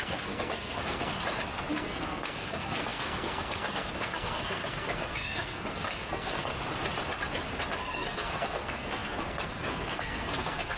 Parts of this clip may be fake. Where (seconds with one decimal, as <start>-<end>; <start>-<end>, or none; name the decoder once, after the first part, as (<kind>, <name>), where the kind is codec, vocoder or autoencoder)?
0.0-1.1 (codec, SNAC); 1.7-6.5; 7.9-10.8

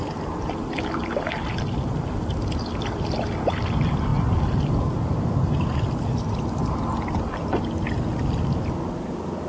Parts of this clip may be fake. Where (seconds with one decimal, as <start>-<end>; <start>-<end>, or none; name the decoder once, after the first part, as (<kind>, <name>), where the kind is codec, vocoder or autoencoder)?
none

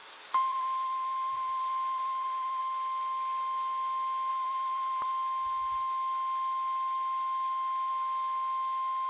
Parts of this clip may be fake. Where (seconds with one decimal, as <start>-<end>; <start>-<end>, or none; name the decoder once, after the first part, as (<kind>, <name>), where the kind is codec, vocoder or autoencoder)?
0.0-2.6 (vocoder, BigVGAN v2); 4.3-5.1

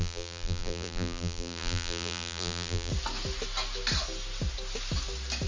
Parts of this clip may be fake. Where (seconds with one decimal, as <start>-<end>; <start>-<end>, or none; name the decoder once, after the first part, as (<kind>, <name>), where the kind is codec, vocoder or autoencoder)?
0.0-2.9 (vocoder, BigVGAN v2)

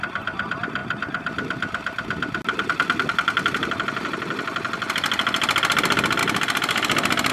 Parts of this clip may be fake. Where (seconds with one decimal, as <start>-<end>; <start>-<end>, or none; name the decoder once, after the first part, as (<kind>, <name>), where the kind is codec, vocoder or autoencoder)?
none

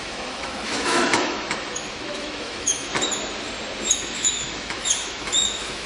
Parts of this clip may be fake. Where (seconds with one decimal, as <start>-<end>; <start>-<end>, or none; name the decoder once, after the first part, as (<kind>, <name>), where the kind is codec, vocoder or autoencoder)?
0.0-2.9 (autoencoder, DAC-VAE); 3.9-5.9

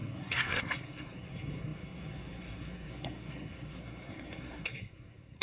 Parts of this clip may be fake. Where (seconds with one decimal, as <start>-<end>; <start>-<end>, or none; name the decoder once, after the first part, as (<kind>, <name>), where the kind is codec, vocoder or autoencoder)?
0.0-5.4 (codec, SNAC)